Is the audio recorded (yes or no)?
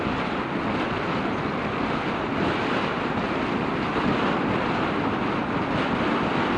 yes